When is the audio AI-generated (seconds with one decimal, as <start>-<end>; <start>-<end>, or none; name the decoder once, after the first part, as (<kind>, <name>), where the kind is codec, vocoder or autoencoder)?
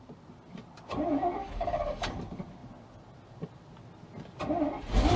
1.4-2.1 (codec, DAC)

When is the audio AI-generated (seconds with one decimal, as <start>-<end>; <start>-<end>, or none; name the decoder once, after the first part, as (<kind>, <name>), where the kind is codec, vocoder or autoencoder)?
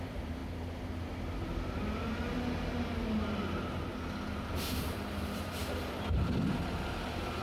0.0-0.4 (vocoder, BigVGAN v2); 4.8-5.6; 6.1-7.4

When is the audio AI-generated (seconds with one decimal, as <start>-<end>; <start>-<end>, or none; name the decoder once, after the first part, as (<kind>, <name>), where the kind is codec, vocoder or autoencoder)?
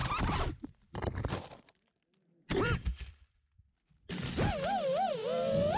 0.0-3.3 (vocoder, BigVGAN v2)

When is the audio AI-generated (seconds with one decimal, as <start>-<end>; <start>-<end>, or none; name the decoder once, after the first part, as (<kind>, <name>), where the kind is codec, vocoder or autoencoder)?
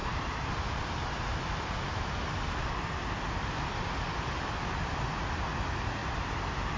0.0-2.1 (vocoder, BigVGAN v2); 6.0-6.8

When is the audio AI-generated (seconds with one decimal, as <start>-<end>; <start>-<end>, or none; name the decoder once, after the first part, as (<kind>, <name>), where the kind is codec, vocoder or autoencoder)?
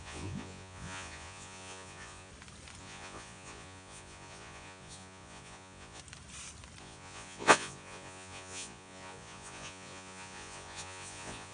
0.0-2.3 (vocoder, Vocos); 2.8-6.0; 6.8-11.5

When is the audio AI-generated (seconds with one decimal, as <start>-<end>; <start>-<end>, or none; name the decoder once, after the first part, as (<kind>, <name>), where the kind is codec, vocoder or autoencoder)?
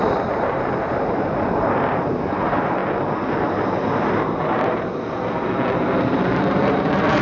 0.0-2.8 (vocoder, BigVGAN v2); 3.4-4.9; 6.0-7.2